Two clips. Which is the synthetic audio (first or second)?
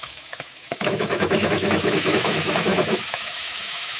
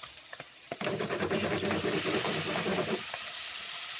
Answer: first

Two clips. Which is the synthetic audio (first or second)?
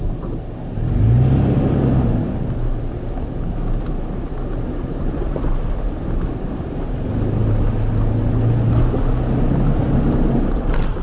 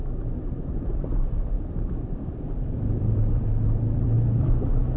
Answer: second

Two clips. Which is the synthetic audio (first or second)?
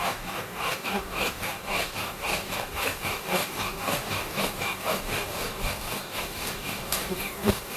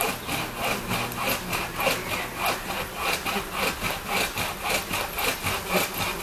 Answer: first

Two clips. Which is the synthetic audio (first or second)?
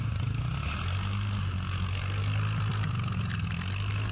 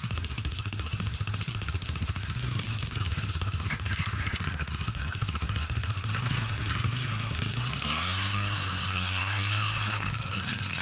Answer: second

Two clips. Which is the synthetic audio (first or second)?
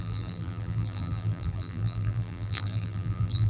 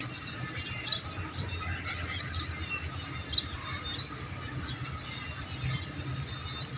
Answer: first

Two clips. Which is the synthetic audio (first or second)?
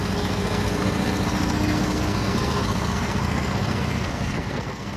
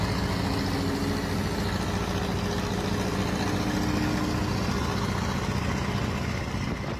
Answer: first